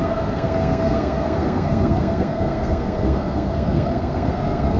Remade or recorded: remade